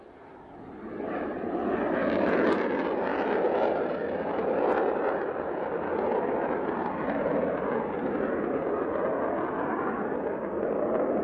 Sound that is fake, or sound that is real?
real